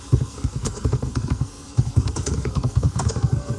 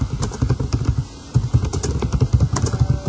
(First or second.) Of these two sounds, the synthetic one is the first